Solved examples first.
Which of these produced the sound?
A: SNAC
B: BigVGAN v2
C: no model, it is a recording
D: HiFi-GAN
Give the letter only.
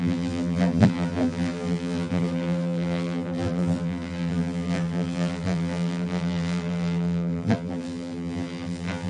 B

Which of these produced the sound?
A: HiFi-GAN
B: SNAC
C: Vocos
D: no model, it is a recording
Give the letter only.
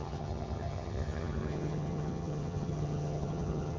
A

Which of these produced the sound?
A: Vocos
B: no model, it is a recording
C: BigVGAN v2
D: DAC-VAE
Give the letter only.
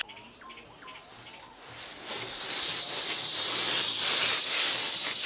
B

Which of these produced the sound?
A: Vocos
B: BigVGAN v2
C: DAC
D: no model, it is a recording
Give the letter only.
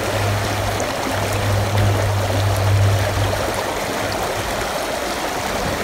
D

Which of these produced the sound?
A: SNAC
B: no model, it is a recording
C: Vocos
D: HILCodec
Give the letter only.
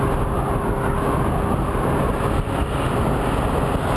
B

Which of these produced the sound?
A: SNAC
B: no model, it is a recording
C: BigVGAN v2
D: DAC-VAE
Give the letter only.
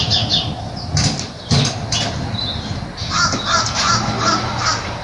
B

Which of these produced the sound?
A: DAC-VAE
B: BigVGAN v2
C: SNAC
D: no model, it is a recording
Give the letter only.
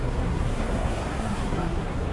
C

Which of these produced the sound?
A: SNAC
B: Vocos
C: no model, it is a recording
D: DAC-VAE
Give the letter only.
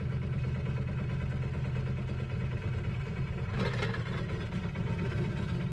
C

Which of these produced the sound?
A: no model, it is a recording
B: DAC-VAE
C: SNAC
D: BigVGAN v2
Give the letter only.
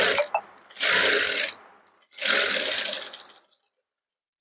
A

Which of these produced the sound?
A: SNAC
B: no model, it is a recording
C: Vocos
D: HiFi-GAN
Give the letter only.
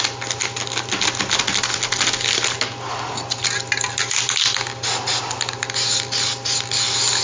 B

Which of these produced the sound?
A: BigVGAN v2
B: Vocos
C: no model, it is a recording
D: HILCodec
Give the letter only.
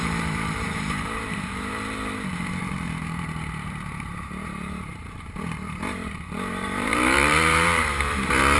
A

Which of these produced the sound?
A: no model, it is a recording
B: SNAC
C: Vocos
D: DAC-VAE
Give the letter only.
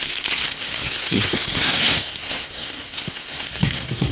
B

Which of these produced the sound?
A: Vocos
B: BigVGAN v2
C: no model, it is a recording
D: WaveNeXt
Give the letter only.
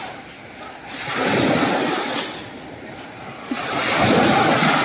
C